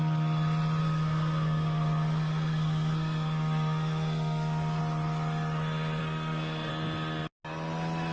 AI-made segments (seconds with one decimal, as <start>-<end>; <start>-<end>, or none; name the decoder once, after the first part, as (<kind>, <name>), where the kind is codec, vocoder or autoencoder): 0.8-4.8 (codec, SNAC); 6.0-6.7